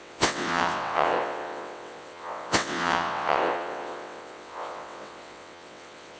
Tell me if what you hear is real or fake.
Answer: fake